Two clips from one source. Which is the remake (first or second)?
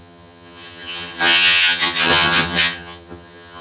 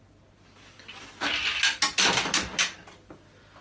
first